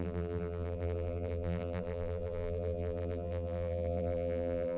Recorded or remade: remade